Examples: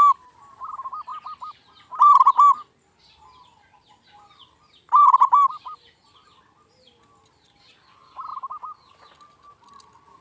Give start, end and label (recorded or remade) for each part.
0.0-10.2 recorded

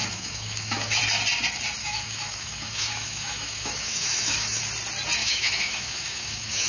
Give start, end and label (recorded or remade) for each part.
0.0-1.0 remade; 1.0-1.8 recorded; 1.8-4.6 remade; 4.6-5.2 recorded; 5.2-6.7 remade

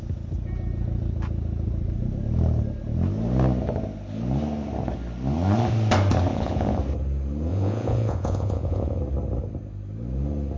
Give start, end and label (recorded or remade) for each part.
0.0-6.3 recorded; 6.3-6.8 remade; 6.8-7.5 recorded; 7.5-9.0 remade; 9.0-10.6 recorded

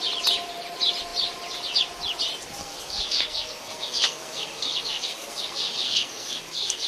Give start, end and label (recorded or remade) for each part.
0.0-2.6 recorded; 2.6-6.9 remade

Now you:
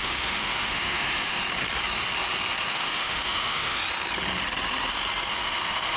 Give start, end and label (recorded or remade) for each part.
0.0-1.4 remade; 1.4-2.7 recorded; 2.7-3.8 remade; 3.8-5.3 recorded; 5.3-6.0 remade

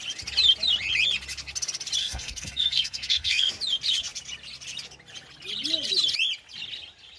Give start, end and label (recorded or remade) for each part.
0.0-2.0 recorded; 2.0-3.5 remade; 3.5-7.2 recorded